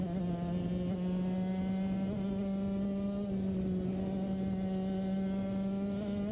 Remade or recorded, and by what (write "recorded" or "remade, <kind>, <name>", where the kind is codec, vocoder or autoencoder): recorded